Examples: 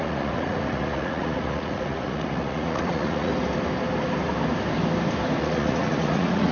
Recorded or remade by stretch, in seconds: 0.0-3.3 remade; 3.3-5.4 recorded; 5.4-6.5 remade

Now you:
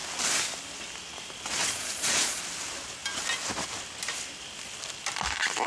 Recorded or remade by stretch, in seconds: 0.0-1.6 recorded; 1.6-2.4 remade; 2.4-5.7 recorded

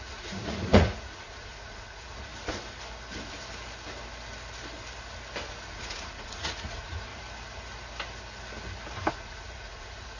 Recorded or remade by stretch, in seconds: 0.0-2.3 remade; 2.3-5.7 recorded; 5.7-7.1 remade; 7.1-9.1 recorded; 9.1-10.2 remade

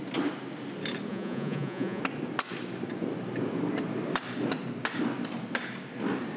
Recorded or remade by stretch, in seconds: 0.0-1.1 recorded; 1.1-2.0 remade; 2.0-6.4 recorded

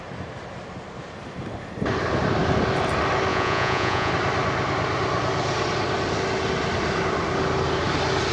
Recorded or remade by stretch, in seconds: 0.0-3.3 recorded; 3.3-4.1 remade; 4.1-8.3 recorded

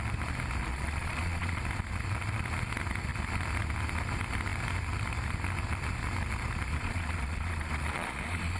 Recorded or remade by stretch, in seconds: 0.0-0.6 recorded; 0.6-1.6 remade; 1.6-6.7 recorded; 6.7-8.6 remade

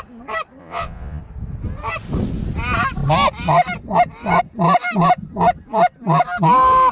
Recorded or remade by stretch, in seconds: 0.0-0.6 recorded; 0.6-1.2 remade; 1.2-6.9 recorded